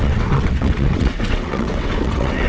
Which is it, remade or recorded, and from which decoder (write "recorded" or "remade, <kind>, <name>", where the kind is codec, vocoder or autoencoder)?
remade, vocoder, WaveNeXt